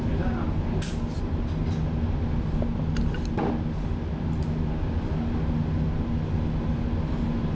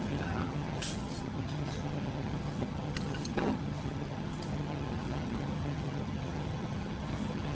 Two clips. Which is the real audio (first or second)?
first